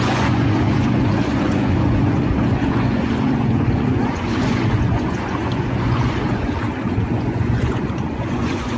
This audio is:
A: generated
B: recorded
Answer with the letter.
A